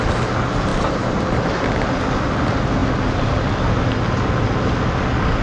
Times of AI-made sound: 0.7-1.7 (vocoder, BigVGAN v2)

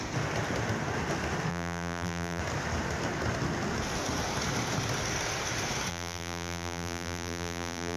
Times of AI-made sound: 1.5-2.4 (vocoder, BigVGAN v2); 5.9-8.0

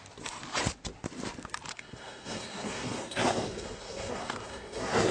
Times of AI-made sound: 1.7-5.1 (codec, SNAC)